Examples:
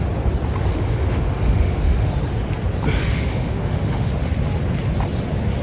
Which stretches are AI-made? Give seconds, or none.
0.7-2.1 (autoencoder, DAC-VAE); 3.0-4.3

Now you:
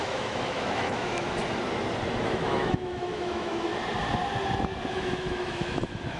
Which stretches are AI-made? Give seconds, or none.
0.0-1.4 (autoencoder, DAC-VAE); 2.2-3.7; 4.9-6.2

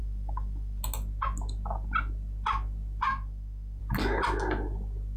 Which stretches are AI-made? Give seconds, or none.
0.0-0.8 (autoencoder, DAC-VAE); 3.1-3.8

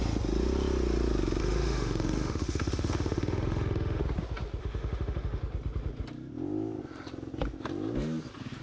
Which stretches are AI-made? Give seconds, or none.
1.4-4.0 (autoencoder, DAC-VAE); 4.6-5.4

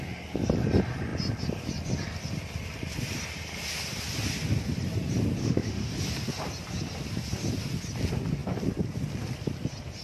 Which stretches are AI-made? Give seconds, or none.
5.4-5.9 (autoencoder, DAC-VAE)

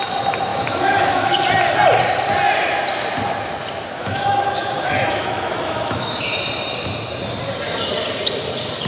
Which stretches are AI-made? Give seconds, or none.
0.5-1.3 (autoencoder, DAC-VAE); 4.0-6.3

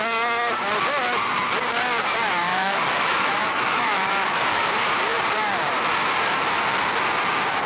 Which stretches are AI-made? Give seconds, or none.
2.5-4.6 (autoencoder, DAC-VAE)

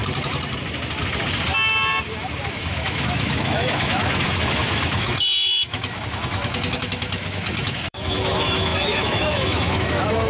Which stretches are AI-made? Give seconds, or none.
2.5-10.3 (autoencoder, DAC-VAE)